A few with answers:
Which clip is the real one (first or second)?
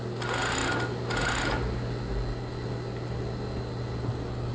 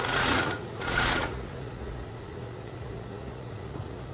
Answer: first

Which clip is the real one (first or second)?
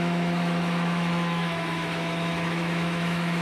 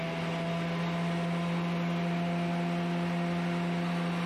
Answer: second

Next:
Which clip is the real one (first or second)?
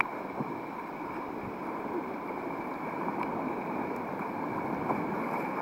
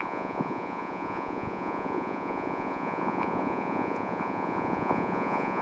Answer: first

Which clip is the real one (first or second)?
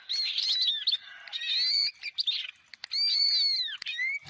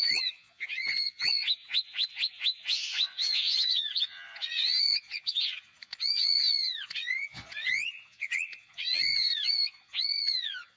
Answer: first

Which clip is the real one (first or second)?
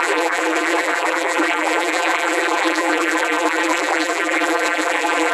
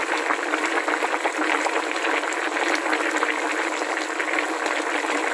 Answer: second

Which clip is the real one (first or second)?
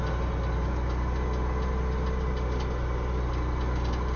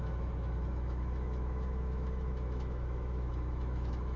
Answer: first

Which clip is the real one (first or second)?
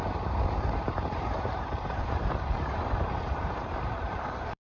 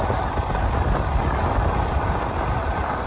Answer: second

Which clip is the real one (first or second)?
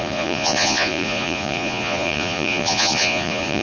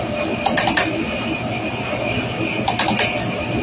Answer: second